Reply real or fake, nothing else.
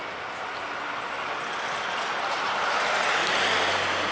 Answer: real